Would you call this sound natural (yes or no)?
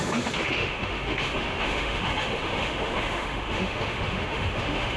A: no